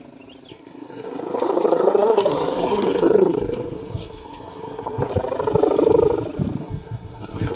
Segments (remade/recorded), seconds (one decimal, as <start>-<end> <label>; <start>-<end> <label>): 0.0-0.5 recorded; 0.5-5.1 remade; 5.1-6.6 recorded; 6.6-7.6 remade